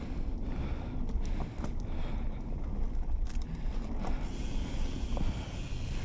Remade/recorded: recorded